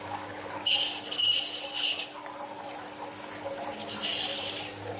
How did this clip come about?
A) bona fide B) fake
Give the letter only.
A